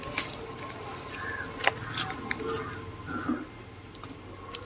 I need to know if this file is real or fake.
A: real